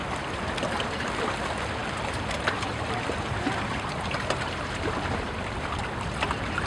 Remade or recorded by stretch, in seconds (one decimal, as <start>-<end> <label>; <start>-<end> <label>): 0.0-1.8 recorded; 1.8-5.8 remade; 5.8-6.7 recorded